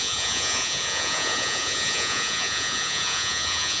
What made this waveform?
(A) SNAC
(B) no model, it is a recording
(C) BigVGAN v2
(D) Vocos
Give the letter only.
D